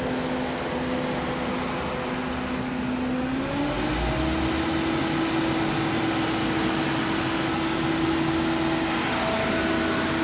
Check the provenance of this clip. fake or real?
real